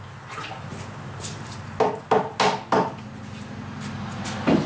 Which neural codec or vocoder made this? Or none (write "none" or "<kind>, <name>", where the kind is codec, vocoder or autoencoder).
none